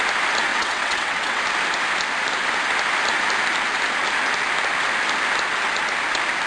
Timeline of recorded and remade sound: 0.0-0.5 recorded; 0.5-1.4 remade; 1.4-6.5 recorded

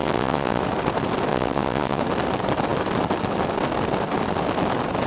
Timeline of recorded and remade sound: 0.0-0.6 remade; 0.6-1.3 recorded; 1.3-2.0 remade; 2.0-5.1 recorded